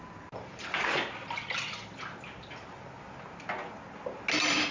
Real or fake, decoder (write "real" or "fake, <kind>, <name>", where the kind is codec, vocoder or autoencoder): real